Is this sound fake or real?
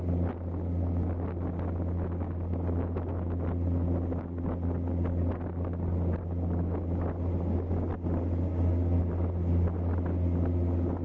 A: real